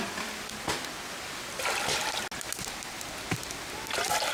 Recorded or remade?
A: recorded